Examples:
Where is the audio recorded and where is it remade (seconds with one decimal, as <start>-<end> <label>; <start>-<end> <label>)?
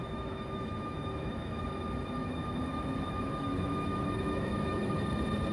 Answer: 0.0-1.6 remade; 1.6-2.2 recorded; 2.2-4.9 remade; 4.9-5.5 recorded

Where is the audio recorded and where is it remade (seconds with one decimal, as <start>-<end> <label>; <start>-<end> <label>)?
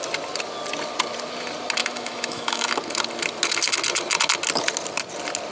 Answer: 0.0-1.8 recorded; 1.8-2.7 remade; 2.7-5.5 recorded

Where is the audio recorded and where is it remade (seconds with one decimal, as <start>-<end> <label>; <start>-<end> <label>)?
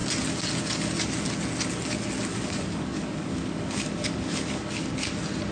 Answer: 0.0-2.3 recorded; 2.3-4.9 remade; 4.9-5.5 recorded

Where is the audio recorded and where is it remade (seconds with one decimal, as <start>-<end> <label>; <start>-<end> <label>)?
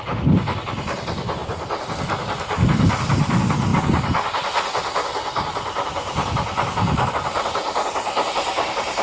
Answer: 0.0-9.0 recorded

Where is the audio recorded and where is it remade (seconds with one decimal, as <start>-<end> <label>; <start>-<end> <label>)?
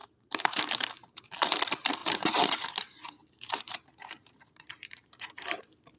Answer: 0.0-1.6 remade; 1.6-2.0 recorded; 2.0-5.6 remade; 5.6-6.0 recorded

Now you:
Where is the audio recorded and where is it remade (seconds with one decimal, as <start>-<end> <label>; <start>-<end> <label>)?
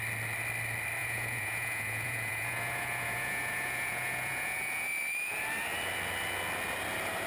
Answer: 0.0-1.0 recorded; 1.0-5.4 remade; 5.4-7.3 recorded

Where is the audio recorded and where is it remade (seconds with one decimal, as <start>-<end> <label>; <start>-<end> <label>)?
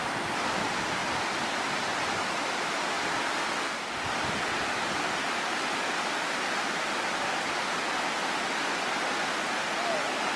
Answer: 0.0-10.4 recorded